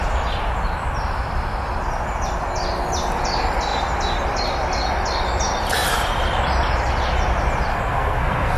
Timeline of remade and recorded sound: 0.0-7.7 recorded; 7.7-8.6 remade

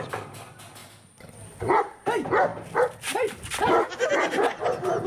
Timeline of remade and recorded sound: 0.0-5.1 recorded